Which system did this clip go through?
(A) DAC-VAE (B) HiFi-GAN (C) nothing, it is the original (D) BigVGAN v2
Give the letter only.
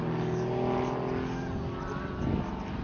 C